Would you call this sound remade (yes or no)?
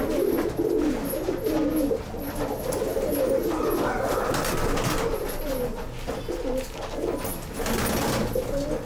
no